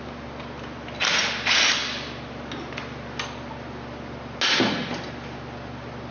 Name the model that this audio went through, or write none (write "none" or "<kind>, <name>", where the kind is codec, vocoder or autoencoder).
none